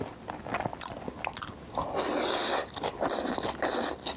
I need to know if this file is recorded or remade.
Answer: recorded